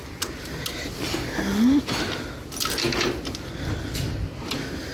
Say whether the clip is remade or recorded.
recorded